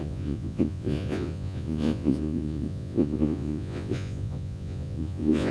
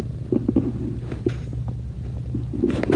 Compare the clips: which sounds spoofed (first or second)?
first